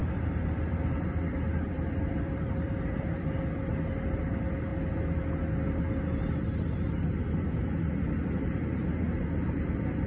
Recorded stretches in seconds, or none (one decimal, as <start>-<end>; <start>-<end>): 3.3-10.1